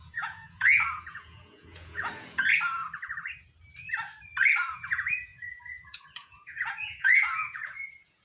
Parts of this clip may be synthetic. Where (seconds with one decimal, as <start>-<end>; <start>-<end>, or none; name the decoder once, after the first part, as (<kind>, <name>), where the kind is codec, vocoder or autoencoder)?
0.0-2.5 (vocoder, Vocos); 4.7-8.2